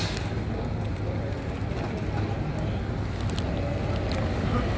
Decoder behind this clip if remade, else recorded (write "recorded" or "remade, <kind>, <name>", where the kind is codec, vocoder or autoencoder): recorded